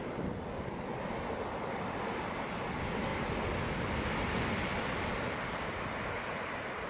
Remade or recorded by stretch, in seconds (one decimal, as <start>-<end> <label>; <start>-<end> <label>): 0.0-6.9 recorded

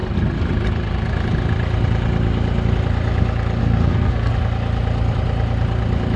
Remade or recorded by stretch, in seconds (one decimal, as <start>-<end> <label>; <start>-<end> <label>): 0.0-3.6 recorded; 3.6-4.3 remade; 4.3-6.2 recorded

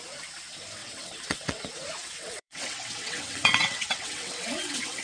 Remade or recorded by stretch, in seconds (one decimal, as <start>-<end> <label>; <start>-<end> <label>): 0.0-0.8 recorded; 0.8-1.6 remade; 1.6-2.0 recorded; 2.0-5.0 remade

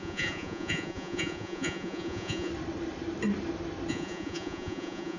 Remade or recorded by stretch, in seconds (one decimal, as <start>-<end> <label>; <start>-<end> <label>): 0.0-2.5 remade; 2.5-3.9 recorded; 3.9-5.2 remade

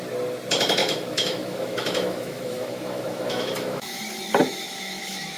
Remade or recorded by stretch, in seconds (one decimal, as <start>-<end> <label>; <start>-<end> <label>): 0.0-0.8 recorded; 0.8-4.0 remade; 4.0-4.4 recorded; 4.4-5.4 remade